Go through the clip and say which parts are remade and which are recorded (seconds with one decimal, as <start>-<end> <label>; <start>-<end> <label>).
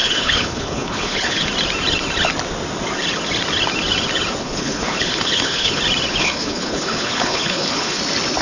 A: 0.0-1.5 remade; 1.5-4.4 recorded; 4.4-5.8 remade; 5.8-6.2 recorded; 6.2-8.0 remade; 8.0-8.4 recorded